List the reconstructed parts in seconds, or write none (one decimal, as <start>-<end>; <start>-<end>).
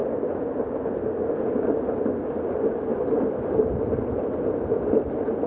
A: 2.3-5.5